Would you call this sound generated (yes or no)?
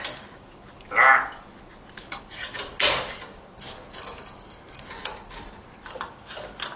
no